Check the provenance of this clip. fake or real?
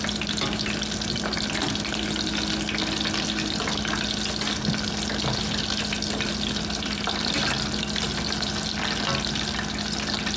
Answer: real